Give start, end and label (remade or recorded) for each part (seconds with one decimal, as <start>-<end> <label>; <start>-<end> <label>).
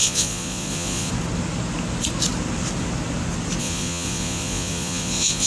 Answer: 0.0-1.1 remade; 1.1-3.6 recorded; 3.6-5.5 remade